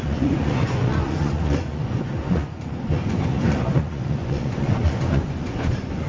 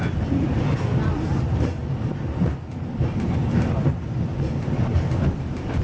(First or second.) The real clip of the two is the second